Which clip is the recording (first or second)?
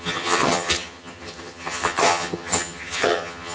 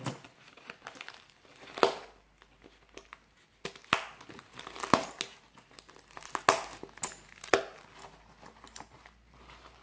second